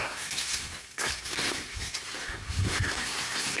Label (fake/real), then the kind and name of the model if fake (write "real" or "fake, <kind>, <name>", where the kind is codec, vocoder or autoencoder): fake, codec, SNAC